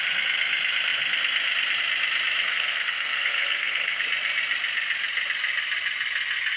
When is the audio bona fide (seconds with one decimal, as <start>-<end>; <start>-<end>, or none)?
0.0-2.4; 4.0-6.6

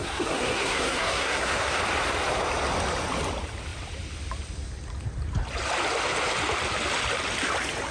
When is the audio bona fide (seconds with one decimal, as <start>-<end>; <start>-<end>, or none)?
1.8-7.9